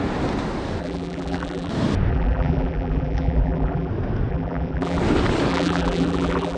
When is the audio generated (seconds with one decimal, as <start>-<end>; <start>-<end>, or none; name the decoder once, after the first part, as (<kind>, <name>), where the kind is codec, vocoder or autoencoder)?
0.8-1.7 (vocoder, BigVGAN v2); 2.1-3.9; 4.3-5.0; 5.5-6.6

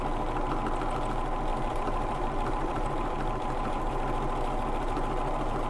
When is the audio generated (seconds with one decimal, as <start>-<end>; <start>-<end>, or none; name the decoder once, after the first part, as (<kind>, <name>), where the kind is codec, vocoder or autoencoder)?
1.5-3.9 (vocoder, BigVGAN v2)

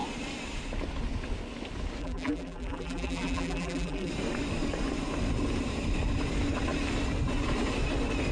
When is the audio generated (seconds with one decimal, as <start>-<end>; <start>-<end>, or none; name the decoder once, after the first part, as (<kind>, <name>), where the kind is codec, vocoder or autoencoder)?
2.0-4.1 (vocoder, BigVGAN v2)

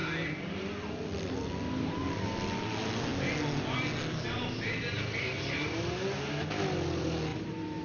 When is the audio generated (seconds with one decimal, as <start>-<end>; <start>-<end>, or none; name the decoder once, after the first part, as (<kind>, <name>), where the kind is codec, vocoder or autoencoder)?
7.3-7.8 (vocoder, BigVGAN v2)

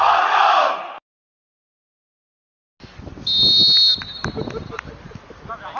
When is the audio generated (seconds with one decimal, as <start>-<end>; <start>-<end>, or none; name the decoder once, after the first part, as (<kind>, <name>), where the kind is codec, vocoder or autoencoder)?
0.0-1.1 (vocoder, BigVGAN v2); 4.1-5.8

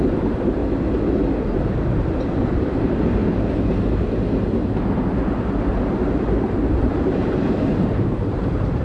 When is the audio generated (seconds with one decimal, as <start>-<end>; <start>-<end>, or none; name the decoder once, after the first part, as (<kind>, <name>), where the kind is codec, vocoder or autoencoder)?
0.0-0.6 (vocoder, BigVGAN v2); 1.4-3.2; 5.7-8.8

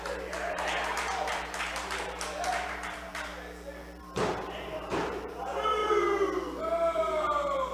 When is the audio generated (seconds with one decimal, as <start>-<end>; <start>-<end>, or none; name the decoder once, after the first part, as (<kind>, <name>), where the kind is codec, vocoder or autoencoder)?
0.0-3.3 (vocoder, BigVGAN v2); 4.0-5.8; 6.6-7.7

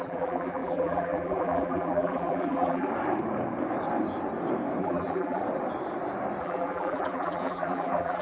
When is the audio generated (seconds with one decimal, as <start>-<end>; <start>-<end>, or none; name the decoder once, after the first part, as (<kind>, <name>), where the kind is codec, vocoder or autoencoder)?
0.0-2.9 (vocoder, BigVGAN v2); 4.8-5.4; 6.4-8.2